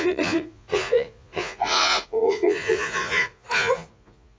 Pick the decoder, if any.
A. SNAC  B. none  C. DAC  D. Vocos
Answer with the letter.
D